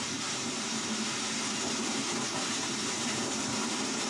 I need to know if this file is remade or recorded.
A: remade